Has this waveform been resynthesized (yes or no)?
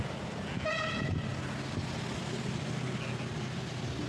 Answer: no